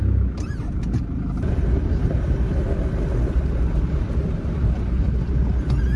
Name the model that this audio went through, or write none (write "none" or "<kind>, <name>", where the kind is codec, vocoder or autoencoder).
none